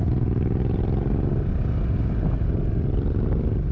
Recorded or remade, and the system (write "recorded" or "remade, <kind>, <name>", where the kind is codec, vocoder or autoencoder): recorded